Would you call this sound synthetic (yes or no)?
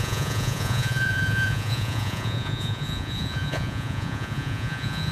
yes